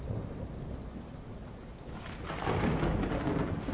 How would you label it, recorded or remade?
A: recorded